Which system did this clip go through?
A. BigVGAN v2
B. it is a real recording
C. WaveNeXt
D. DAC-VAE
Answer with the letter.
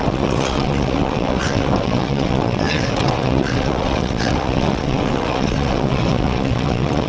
C